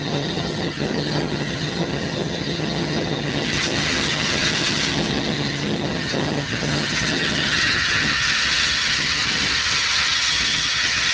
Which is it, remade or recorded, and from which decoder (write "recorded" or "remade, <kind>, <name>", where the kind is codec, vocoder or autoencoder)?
remade, vocoder, HiFi-GAN